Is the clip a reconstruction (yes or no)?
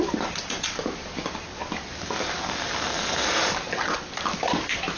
no